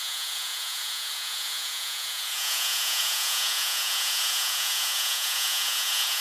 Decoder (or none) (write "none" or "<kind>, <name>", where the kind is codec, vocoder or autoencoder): vocoder, Vocos